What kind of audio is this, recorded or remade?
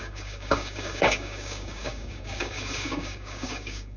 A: remade